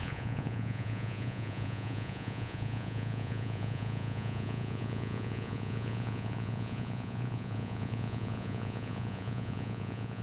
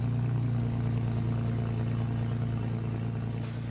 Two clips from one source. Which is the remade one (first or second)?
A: first